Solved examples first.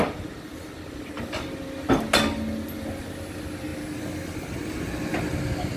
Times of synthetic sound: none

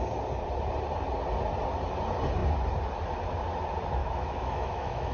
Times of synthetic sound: 4.0-5.1 (autoencoder, DAC-VAE)

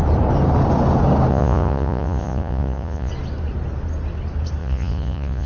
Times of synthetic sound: 1.3-3.1 (vocoder, Vocos); 4.6-5.5

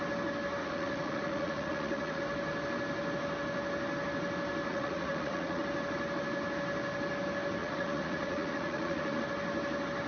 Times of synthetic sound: 0.6-2.2 (vocoder, Vocos); 4.7-5.6; 7.6-9.2

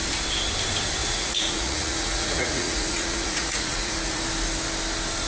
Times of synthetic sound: 1.0-4.2 (vocoder, Vocos)

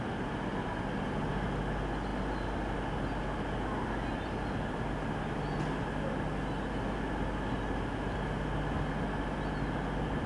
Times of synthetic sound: none

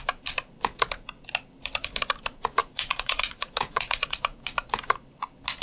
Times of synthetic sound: 2.6-4.4 (vocoder, Vocos)